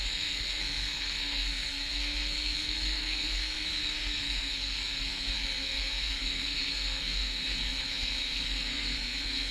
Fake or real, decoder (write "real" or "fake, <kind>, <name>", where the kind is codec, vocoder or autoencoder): fake, codec, SNAC